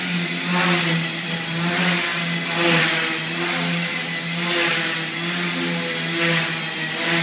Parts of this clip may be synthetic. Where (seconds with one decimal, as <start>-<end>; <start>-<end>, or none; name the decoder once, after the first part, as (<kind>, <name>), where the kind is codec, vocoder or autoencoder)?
none